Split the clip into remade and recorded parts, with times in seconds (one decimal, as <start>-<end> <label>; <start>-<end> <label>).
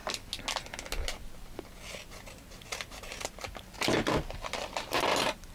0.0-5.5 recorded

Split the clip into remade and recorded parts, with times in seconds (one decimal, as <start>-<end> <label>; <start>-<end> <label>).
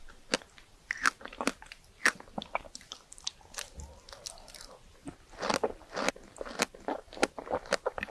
0.0-8.1 recorded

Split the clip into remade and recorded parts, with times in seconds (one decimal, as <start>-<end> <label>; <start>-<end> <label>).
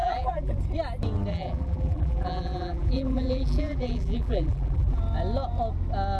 0.0-0.5 remade; 0.5-1.3 recorded; 1.3-5.0 remade; 5.0-6.2 recorded